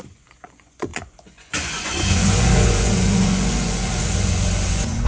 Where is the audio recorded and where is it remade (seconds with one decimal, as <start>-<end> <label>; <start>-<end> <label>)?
0.0-5.1 remade